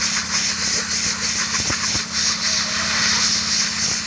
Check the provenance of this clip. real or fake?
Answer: real